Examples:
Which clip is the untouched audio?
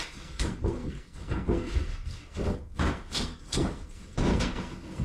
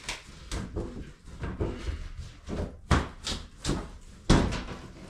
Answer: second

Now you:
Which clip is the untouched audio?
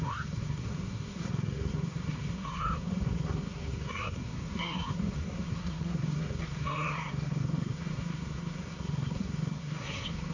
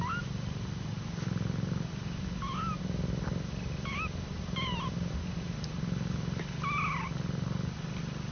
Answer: second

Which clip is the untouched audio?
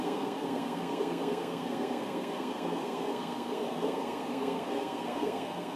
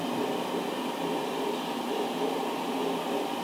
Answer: second